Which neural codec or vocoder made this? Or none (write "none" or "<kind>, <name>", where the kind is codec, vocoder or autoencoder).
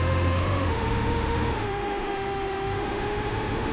autoencoder, DAC-VAE